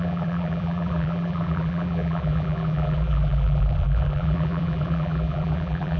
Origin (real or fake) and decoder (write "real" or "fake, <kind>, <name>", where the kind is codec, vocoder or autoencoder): fake, vocoder, BigVGAN v2